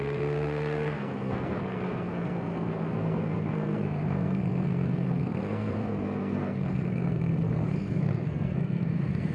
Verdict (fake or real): fake